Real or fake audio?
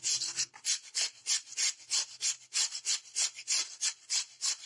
real